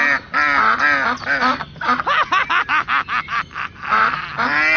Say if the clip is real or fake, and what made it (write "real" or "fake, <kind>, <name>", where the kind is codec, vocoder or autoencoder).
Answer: real